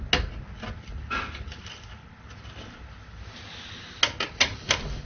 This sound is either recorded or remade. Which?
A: recorded